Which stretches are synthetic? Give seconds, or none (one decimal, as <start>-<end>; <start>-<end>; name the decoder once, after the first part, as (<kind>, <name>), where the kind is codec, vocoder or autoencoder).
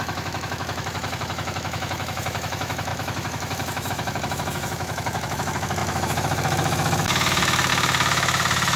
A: 0.0-8.8 (autoencoder, DAC-VAE)